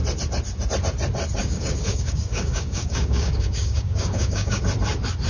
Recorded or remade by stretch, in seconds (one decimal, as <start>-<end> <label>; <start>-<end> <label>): 0.0-1.4 recorded; 1.4-4.6 remade; 4.6-5.3 recorded

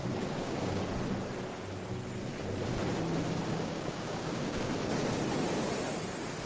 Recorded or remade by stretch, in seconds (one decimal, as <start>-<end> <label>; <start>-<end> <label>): 0.0-0.8 remade; 0.8-3.5 recorded; 3.5-4.7 remade; 4.7-6.5 recorded

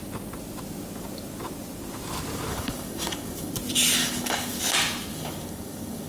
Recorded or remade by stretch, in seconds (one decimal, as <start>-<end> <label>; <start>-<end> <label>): 0.0-2.5 recorded; 2.5-3.5 remade; 3.5-4.0 recorded; 4.0-4.6 remade; 4.6-5.1 recorded; 5.1-6.1 remade

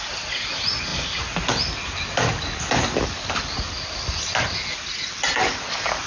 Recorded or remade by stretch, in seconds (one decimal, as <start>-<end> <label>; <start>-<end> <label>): 0.0-6.1 recorded